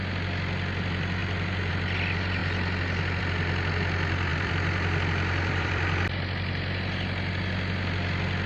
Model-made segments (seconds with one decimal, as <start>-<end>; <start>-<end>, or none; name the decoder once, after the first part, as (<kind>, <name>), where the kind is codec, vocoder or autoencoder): 1.2-1.7 (vocoder, BigVGAN v2); 4.3-6.1